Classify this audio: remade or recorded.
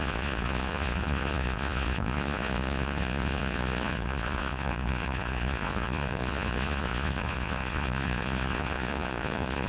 remade